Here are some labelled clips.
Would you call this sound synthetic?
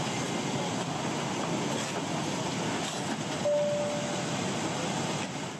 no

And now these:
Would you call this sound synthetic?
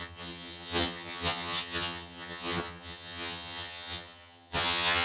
yes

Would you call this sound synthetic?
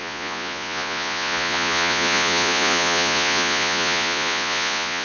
yes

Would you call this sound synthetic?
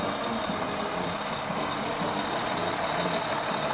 no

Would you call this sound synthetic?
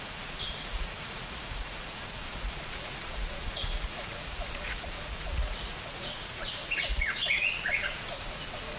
yes